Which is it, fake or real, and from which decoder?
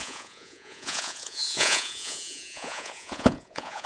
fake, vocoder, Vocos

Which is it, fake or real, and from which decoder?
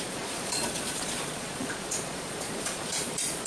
fake, vocoder, Vocos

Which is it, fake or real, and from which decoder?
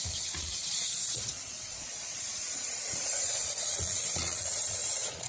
fake, vocoder, Vocos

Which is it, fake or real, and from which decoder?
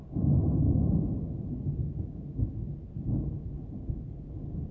real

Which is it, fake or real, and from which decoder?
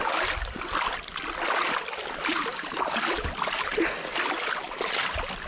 real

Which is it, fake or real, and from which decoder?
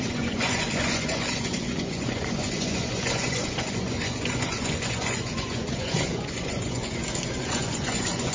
fake, vocoder, Vocos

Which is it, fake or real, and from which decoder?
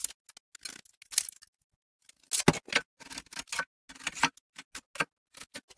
real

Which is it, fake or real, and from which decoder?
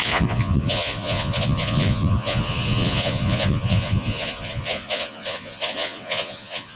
fake, vocoder, Vocos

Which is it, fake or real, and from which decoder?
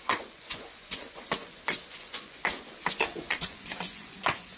fake, vocoder, Vocos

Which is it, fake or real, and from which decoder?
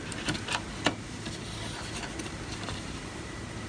real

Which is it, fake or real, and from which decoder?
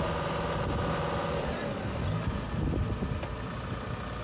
real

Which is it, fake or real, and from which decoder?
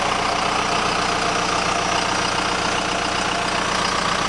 real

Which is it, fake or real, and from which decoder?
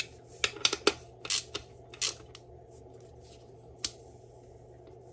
real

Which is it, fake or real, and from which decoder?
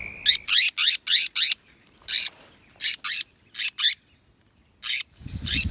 real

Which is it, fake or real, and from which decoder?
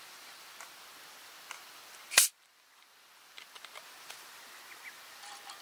real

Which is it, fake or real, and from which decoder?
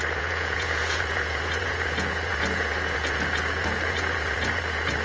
fake, vocoder, Vocos